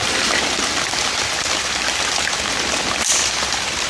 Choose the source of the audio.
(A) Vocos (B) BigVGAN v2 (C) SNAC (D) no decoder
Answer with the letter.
B